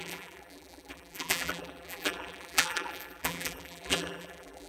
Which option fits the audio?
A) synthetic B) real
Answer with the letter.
A